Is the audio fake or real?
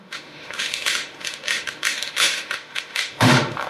fake